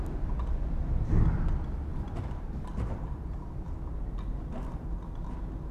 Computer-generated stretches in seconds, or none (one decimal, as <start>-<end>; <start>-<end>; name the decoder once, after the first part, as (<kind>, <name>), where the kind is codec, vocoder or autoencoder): 1.9-4.8 (vocoder, BigVGAN v2)

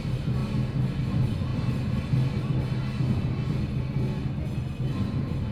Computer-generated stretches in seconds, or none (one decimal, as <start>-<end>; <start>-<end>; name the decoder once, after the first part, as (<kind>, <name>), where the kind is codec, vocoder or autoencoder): 0.0-0.4 (vocoder, BigVGAN v2); 1.1-1.5; 4.8-5.5

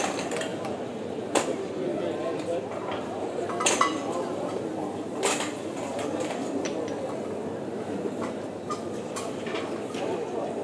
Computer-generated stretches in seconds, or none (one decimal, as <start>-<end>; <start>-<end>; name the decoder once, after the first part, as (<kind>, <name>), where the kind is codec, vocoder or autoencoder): 0.5-1.7 (vocoder, BigVGAN v2)